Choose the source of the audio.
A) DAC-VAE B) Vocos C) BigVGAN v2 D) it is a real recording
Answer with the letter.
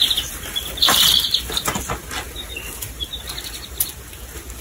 D